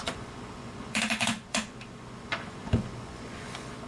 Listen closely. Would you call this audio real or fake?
fake